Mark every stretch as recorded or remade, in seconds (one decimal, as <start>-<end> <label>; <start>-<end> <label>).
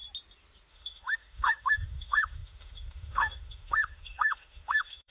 0.0-0.7 recorded; 0.7-5.1 remade